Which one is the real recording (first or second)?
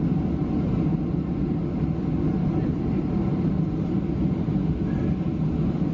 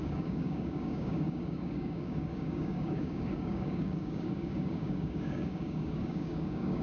first